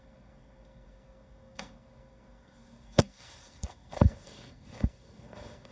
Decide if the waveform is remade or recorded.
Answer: remade